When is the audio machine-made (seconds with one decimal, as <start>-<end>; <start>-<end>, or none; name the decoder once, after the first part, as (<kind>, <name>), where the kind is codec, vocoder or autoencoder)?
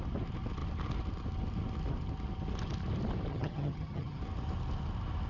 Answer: 3.3-4.2 (vocoder, HiFi-GAN)